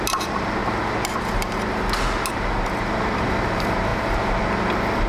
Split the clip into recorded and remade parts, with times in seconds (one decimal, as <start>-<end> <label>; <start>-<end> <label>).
0.0-0.6 remade; 0.6-2.3 recorded; 2.3-3.9 remade; 3.9-5.1 recorded